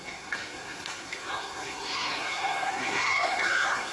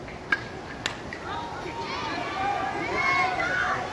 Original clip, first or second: second